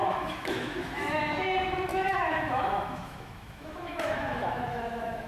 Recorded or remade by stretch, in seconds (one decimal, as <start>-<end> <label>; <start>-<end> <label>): 0.0-1.2 remade; 1.2-1.9 recorded; 1.9-5.3 remade